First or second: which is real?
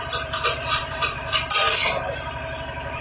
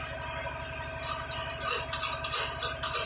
second